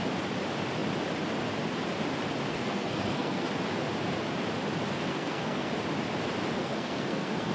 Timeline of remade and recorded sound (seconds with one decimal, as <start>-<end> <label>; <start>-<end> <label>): 0.0-2.5 recorded; 2.5-3.5 remade; 3.5-5.1 recorded; 5.1-5.7 remade; 5.7-6.6 recorded; 6.6-7.5 remade